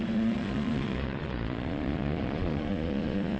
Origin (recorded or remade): remade